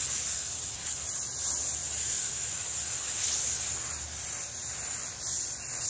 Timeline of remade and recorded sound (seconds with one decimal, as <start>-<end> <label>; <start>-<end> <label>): 0.0-5.9 recorded